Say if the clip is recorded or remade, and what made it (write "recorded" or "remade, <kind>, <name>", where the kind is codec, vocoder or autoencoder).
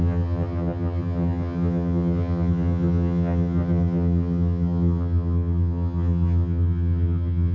remade, vocoder, HiFi-GAN